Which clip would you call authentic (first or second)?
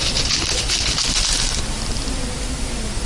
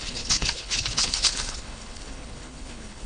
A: first